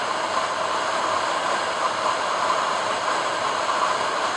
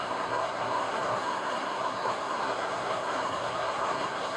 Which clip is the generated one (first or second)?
second